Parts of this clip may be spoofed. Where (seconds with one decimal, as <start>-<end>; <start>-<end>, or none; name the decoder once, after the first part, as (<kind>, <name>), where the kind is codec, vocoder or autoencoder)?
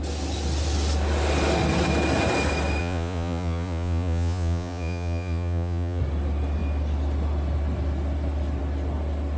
2.8-6.0 (vocoder, Vocos)